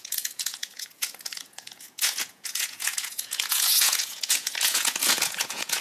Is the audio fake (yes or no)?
yes